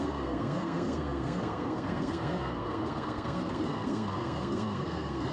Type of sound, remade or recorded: remade